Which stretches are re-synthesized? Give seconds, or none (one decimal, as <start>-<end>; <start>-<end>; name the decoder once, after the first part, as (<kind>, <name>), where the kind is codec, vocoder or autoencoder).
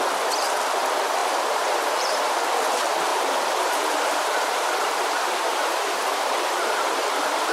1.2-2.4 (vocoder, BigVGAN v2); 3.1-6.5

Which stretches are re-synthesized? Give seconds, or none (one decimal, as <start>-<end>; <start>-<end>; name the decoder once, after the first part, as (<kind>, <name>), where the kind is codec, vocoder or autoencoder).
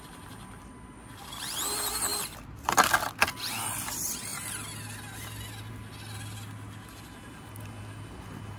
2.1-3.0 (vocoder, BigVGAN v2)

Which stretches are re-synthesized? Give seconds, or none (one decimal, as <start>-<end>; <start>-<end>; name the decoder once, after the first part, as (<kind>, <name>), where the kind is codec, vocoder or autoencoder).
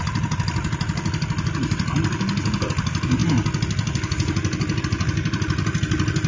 none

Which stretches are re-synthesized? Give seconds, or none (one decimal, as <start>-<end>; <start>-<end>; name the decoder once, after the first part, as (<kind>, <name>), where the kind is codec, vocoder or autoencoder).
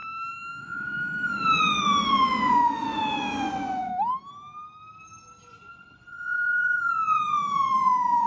0.6-3.9 (vocoder, Vocos); 5.5-8.3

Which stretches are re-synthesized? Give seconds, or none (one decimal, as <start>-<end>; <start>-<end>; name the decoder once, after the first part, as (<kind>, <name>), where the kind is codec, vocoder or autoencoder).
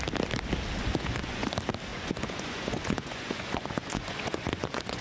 0.8-1.5 (vocoder, Vocos); 1.9-5.0